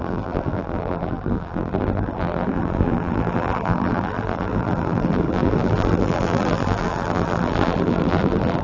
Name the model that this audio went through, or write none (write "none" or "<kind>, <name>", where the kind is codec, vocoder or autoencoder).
vocoder, BigVGAN v2